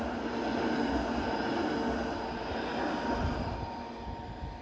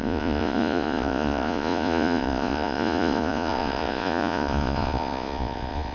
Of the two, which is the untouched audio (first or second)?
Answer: first